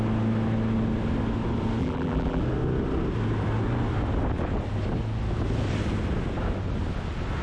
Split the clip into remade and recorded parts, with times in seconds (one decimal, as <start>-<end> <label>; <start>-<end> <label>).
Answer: 0.0-1.8 recorded; 1.8-2.4 remade; 2.4-7.4 recorded